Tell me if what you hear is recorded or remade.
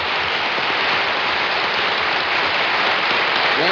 recorded